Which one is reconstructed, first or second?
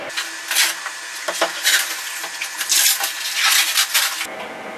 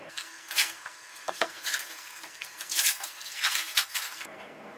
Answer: second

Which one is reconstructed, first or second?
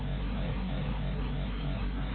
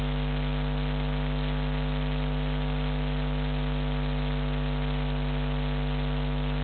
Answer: first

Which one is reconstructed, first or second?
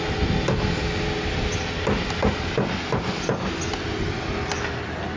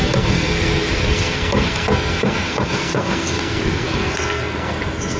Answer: second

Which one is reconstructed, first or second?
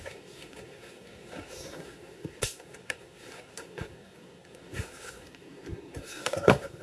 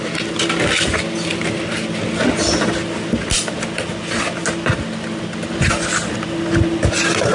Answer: first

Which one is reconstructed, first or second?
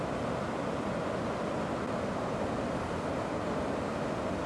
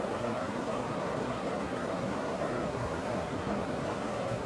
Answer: second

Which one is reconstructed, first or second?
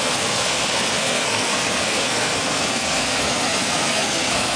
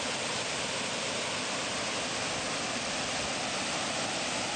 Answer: first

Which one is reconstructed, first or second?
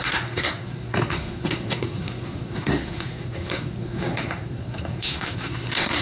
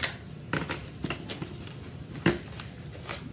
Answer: first